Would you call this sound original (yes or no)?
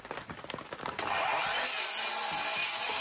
yes